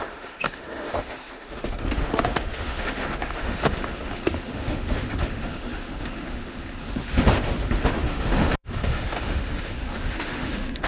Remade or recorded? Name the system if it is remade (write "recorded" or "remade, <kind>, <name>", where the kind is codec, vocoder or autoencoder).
remade, autoencoder, DAC-VAE